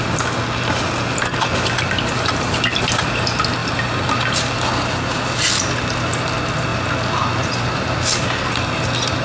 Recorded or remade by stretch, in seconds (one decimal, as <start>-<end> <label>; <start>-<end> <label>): 0.0-9.2 recorded